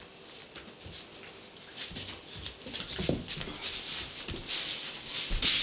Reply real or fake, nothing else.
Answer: real